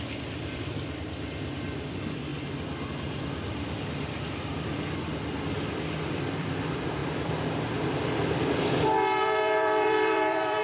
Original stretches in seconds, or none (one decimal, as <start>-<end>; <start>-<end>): 2.3-2.9